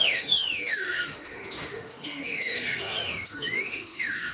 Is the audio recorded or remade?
remade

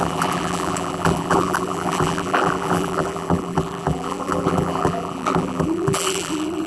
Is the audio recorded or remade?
remade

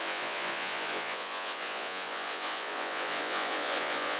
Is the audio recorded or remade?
remade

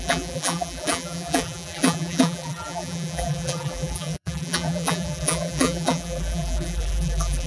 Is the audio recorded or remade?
remade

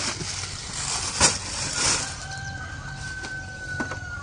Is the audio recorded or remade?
recorded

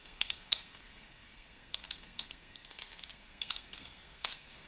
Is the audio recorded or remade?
remade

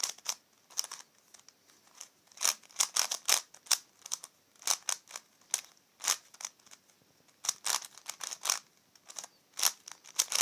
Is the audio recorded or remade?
recorded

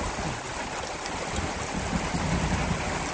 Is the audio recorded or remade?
recorded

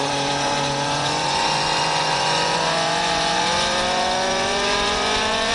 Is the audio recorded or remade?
remade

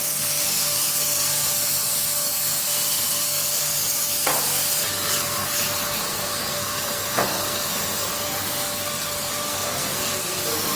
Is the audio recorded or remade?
remade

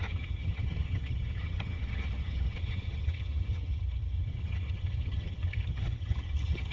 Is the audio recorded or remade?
remade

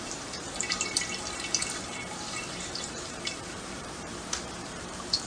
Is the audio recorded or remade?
remade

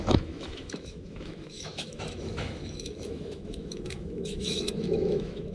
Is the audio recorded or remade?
remade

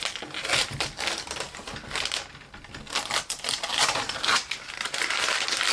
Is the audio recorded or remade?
recorded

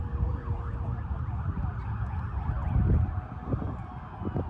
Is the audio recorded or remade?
recorded